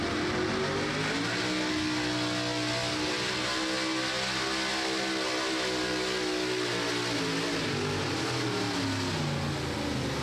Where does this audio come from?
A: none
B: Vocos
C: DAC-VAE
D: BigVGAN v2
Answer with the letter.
A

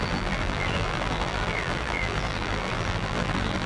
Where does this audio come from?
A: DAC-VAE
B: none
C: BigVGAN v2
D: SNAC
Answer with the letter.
C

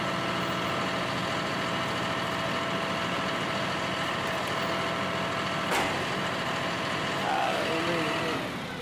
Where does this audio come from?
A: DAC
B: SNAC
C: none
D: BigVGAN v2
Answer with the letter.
C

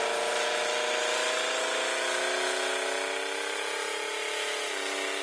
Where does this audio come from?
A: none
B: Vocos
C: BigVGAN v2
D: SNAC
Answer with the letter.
A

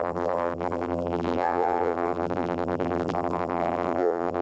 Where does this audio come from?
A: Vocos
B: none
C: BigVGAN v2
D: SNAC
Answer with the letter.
C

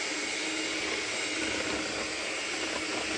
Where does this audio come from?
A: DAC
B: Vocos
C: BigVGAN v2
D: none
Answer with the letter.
D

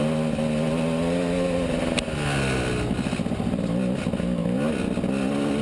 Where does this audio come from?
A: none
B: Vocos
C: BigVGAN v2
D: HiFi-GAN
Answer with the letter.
A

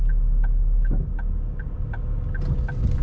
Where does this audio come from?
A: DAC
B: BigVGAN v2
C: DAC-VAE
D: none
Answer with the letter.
D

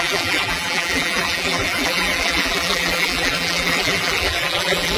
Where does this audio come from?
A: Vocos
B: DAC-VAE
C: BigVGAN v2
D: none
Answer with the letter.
C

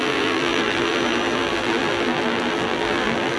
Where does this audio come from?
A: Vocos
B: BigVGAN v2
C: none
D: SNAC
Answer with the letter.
B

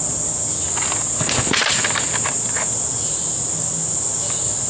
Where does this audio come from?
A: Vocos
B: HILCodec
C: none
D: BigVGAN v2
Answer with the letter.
C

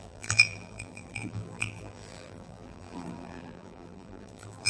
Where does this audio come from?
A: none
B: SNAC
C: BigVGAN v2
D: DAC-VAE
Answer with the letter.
C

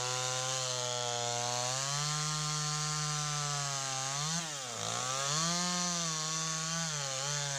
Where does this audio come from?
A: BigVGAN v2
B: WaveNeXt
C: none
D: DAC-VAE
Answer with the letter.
C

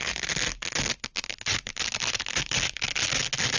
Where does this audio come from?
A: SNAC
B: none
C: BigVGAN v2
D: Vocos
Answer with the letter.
B